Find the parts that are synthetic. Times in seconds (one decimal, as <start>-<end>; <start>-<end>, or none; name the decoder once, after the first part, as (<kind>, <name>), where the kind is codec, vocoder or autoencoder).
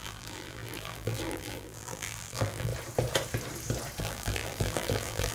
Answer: 0.0-2.7 (vocoder, BigVGAN v2); 4.0-5.3